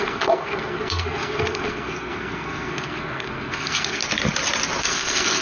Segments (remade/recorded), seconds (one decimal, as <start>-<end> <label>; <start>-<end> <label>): 0.0-4.0 remade; 4.0-4.8 recorded; 4.8-5.4 remade

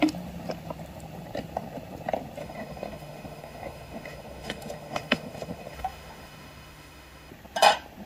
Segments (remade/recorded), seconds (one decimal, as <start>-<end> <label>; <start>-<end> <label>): 0.0-2.4 recorded; 2.4-7.3 remade; 7.3-8.1 recorded

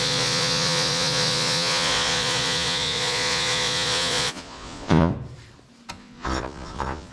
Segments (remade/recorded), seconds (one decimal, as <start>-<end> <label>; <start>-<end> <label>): 0.0-5.1 remade; 5.1-5.9 recorded; 5.9-7.1 remade

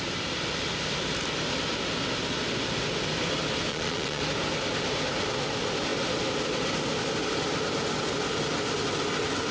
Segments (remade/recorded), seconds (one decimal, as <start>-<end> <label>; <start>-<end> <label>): 0.0-3.7 recorded; 3.7-4.2 remade; 4.2-9.5 recorded

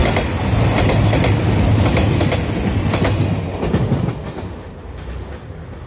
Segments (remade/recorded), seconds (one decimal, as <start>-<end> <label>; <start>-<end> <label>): 0.0-5.9 recorded

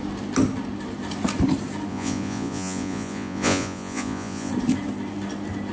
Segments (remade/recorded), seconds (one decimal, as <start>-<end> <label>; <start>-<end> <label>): 0.0-1.9 recorded; 1.9-4.5 remade; 4.5-5.7 recorded

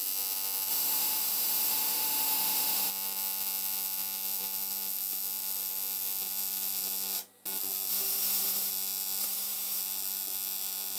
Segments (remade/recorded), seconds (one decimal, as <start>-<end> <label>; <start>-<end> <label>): 0.0-0.7 recorded; 0.7-2.9 remade; 2.9-7.9 recorded; 7.9-8.7 remade; 8.7-9.2 recorded; 9.2-9.8 remade; 9.8-11.0 recorded